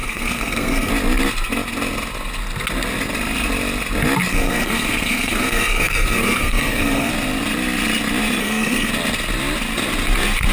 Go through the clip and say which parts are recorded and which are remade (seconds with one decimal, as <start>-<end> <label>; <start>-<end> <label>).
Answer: 0.0-0.9 remade; 0.9-4.3 recorded; 4.3-7.1 remade; 7.1-8.4 recorded; 8.4-8.9 remade; 8.9-10.5 recorded